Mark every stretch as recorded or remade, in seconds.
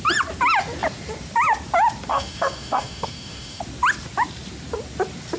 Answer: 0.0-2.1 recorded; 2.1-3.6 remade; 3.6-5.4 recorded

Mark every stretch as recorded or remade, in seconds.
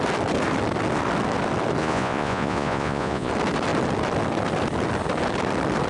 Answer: 0.0-1.8 recorded; 1.8-3.3 remade; 3.3-5.9 recorded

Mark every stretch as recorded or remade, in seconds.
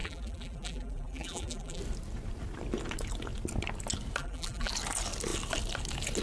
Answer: 0.0-1.8 remade; 1.8-4.2 recorded; 4.2-4.7 remade; 4.7-6.2 recorded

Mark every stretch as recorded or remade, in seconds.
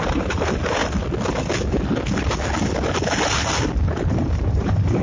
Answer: 0.0-0.8 remade; 0.8-3.8 recorded; 3.8-5.0 remade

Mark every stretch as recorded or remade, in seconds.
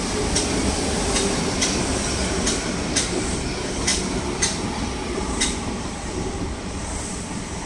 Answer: 0.0-7.7 recorded